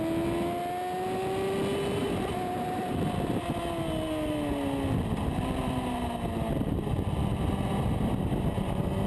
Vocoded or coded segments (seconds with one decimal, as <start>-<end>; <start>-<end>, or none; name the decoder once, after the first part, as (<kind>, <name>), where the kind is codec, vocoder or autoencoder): 2.0-2.9 (vocoder, BigVGAN v2)